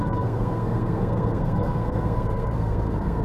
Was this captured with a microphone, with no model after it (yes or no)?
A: no